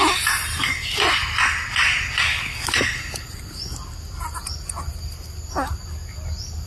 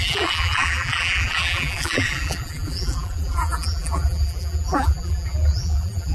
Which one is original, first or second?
first